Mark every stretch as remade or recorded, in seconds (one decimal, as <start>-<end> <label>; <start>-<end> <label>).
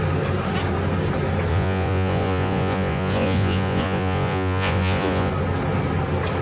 0.0-1.5 recorded; 1.5-5.3 remade; 5.3-6.4 recorded